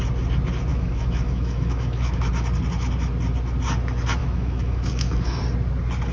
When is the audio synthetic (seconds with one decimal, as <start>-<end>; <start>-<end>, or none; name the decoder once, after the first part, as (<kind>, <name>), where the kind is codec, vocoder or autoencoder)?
0.7-2.3 (autoencoder, DAC-VAE); 4.2-5.4